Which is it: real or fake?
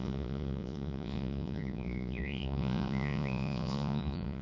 fake